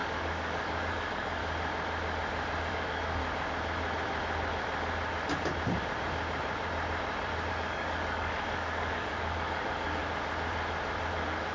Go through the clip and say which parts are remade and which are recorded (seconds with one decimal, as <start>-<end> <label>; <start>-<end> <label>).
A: 0.0-1.4 remade; 1.4-2.7 recorded; 2.7-3.2 remade; 3.2-7.5 recorded; 7.5-10.0 remade; 10.0-11.1 recorded; 11.1-11.5 remade